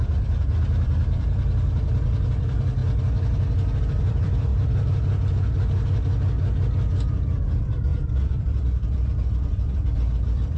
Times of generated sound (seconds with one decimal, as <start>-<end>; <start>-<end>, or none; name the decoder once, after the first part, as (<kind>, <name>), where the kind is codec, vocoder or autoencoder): 0.0-2.8 (vocoder, BigVGAN v2); 3.8-4.5; 7.4-10.6